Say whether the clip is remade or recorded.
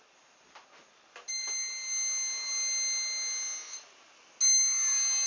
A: recorded